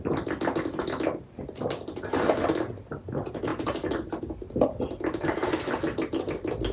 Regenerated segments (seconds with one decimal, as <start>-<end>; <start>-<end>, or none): none